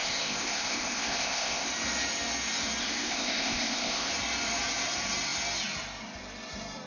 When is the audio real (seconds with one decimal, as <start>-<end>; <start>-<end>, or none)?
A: 1.7-2.8; 4.1-6.9